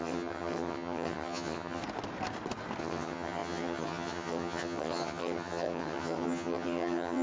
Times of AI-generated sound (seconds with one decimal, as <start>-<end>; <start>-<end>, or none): 0.0-1.8; 2.8-7.2